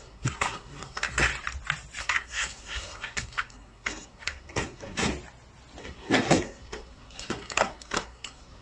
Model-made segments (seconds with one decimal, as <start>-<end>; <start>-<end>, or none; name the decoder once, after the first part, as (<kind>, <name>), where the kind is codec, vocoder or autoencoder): 0.0-1.3 (codec, SNAC); 2.0-5.1; 5.8-8.6